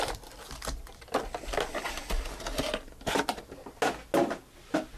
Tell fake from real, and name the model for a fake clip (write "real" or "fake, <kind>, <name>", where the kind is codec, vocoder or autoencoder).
real